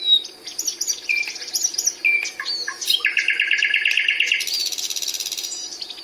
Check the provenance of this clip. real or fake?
real